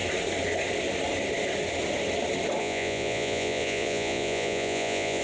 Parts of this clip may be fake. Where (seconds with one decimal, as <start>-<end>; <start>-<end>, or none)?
2.6-5.2